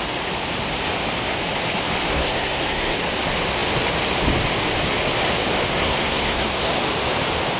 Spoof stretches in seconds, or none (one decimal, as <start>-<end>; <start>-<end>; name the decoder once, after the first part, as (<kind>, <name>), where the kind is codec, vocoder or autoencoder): 2.1-3.0 (codec, SNAC); 5.8-6.7